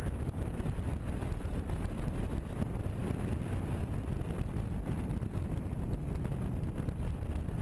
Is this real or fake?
real